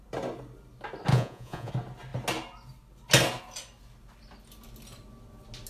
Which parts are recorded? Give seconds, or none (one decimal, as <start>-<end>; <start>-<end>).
0.0-1.1; 1.7-5.7